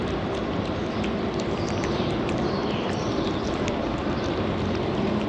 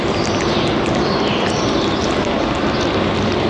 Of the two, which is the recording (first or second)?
second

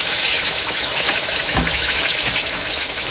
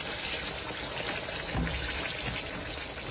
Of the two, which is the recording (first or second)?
second